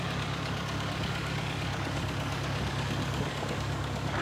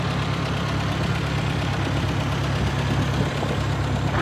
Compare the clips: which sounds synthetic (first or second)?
first